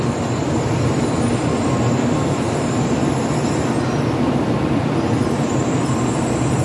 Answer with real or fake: fake